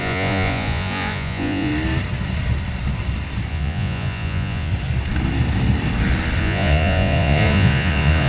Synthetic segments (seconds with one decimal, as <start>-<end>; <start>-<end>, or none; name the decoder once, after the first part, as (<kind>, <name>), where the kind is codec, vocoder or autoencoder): 0.0-1.7 (vocoder, Vocos); 3.5-4.7; 6.4-8.3